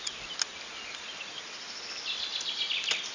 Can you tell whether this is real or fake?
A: real